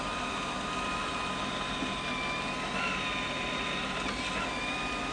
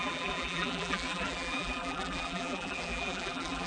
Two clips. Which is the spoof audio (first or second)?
second